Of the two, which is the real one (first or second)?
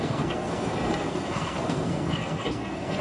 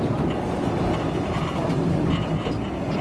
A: second